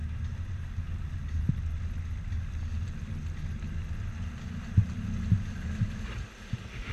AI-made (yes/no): no